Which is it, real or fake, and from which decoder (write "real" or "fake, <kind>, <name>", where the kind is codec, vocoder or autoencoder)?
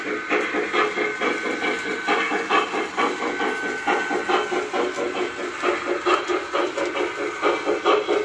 real